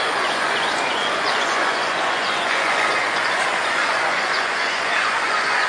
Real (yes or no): no